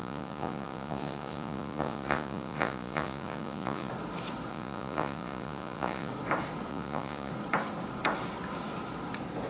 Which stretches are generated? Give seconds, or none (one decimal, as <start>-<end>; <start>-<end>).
0.0-3.9; 4.5-6.1; 6.7-7.3